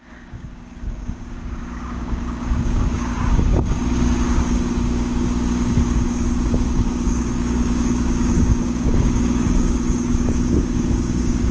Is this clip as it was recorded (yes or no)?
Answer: no